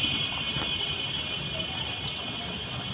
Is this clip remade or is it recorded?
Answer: recorded